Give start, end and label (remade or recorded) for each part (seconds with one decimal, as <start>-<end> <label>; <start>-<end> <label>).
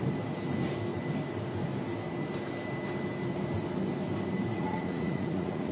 0.0-4.5 recorded; 4.5-5.7 remade